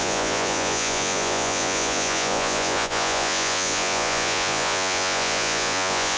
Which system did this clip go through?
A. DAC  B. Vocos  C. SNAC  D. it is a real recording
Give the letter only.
B